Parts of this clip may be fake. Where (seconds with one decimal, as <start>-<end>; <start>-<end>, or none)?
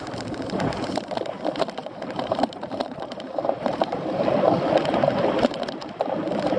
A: 1.8-4.0